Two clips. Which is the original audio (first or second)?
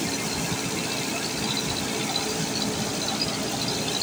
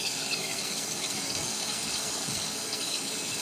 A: first